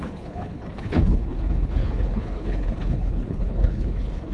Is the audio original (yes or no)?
no